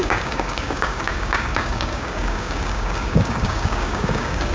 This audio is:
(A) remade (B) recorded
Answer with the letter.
A